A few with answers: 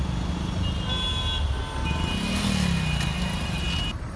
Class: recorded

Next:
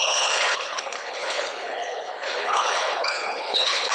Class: remade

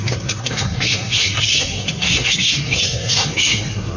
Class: remade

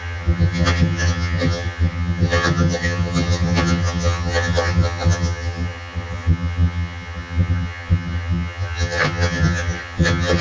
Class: remade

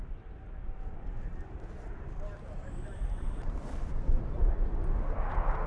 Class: recorded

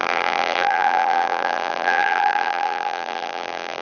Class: remade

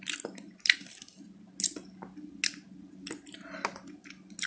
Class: recorded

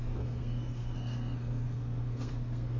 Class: remade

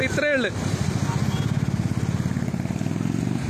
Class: recorded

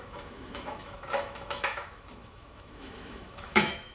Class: remade